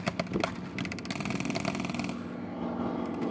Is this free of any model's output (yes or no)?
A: yes